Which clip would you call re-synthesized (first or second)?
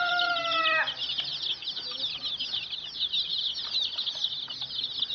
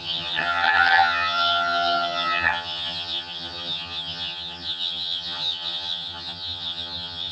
second